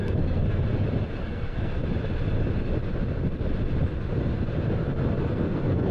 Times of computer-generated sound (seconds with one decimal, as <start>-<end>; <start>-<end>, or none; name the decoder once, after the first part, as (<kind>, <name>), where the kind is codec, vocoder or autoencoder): 0.0-0.6 (codec, SNAC); 1.2-1.8; 5.3-5.9